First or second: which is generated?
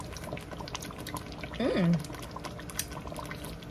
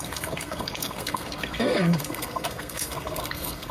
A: second